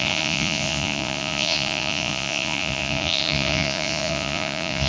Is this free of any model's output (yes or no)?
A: no